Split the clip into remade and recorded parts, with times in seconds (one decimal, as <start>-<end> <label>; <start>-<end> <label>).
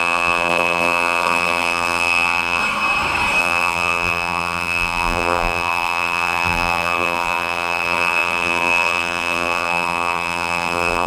0.0-2.6 remade; 2.6-3.4 recorded; 3.4-11.1 remade